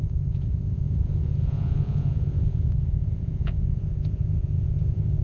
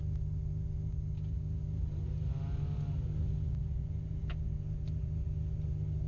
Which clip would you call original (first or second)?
second